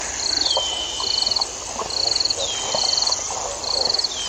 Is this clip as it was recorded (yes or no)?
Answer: yes